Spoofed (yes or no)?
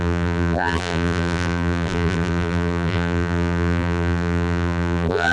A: yes